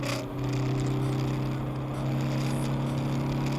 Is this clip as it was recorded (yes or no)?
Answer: yes